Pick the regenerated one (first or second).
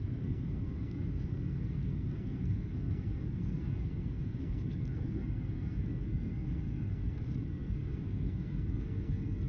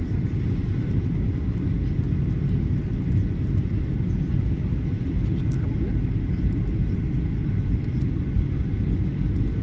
first